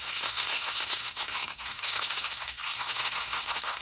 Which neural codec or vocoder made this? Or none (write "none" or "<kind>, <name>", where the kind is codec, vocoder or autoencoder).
codec, SNAC